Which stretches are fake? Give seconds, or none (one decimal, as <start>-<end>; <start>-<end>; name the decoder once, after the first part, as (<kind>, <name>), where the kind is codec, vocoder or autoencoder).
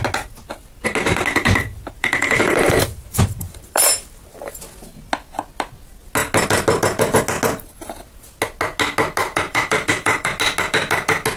1.7-4.6 (vocoder, BigVGAN v2); 9.2-10.3